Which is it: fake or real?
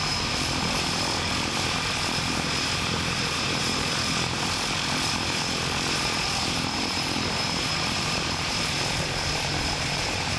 fake